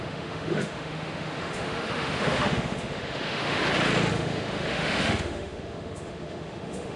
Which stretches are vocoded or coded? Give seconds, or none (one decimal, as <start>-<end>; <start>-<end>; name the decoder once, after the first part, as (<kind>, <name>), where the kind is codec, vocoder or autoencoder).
0.0-3.6 (autoencoder, DAC-VAE); 4.1-7.0